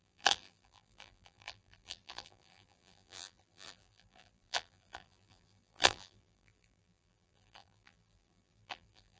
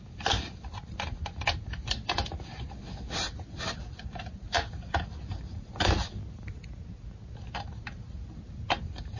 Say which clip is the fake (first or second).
first